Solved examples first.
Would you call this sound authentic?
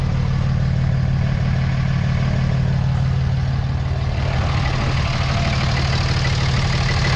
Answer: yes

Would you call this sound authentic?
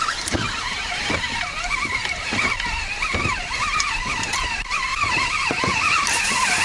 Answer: no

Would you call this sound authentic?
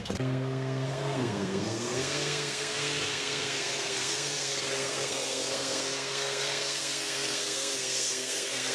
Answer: no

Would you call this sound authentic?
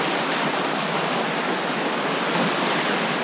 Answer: yes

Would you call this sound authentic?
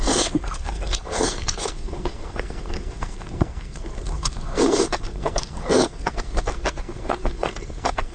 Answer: no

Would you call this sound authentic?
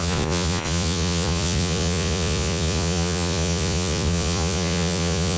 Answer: no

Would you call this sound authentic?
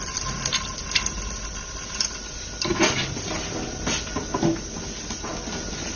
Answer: yes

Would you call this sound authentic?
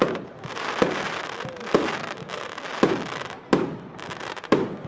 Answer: yes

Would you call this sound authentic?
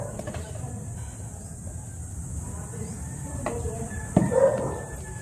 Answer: no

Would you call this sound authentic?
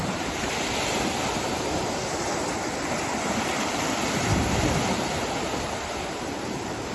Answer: no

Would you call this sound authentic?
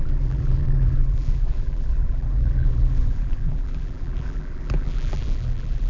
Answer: no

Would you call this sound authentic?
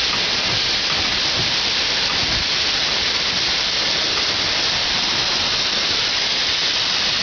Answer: yes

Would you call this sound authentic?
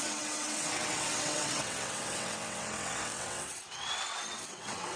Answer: no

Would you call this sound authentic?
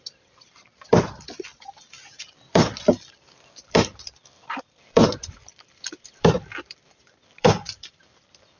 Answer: no